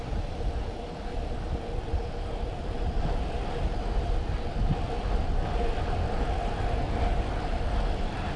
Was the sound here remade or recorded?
recorded